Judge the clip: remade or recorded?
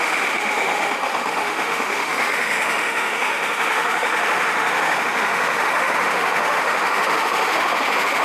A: remade